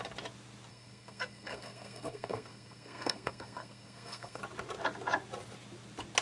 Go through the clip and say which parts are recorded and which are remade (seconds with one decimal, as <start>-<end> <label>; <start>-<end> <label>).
0.0-0.7 recorded; 0.7-4.4 remade; 4.4-6.2 recorded